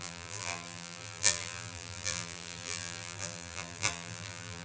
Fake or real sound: fake